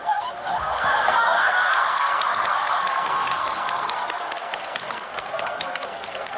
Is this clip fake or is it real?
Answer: fake